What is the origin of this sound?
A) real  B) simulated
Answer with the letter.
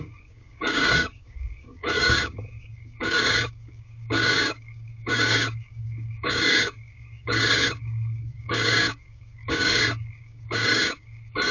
B